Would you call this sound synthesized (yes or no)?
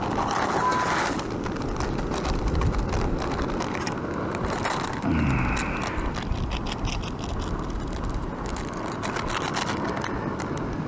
no